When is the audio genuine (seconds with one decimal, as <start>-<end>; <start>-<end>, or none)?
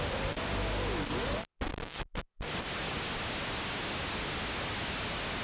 0.0-5.4